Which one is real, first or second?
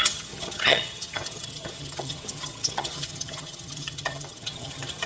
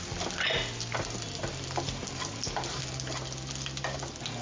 second